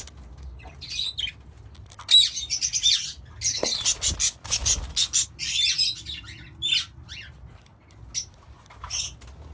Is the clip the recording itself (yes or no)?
yes